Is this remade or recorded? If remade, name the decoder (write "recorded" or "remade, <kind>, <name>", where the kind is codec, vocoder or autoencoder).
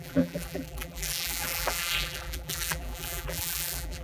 remade, vocoder, BigVGAN v2